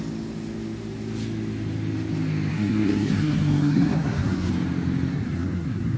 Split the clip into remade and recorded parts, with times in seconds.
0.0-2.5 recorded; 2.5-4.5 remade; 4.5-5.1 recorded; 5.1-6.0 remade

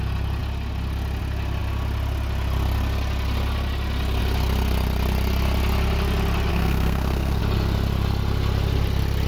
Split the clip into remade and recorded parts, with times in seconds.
0.0-6.5 recorded; 6.5-7.4 remade; 7.4-9.3 recorded

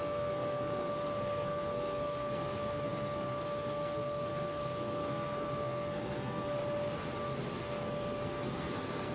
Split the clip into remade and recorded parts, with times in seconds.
0.0-6.6 remade; 6.6-7.6 recorded; 7.6-9.1 remade

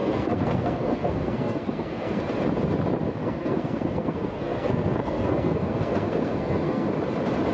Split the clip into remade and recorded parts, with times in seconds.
0.0-2.2 remade; 2.2-3.2 recorded; 3.2-6.9 remade; 6.9-7.5 recorded

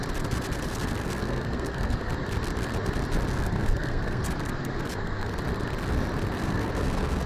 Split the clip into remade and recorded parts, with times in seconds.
0.0-1.0 recorded; 1.0-2.1 remade; 2.1-3.3 recorded; 3.3-5.4 remade; 5.4-6.4 recorded; 6.4-7.3 remade